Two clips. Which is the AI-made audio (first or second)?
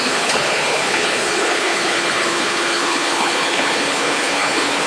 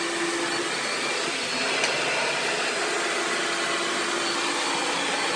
first